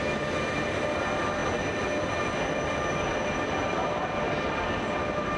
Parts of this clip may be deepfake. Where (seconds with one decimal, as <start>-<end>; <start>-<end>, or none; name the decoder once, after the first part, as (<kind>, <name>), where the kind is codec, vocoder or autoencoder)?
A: none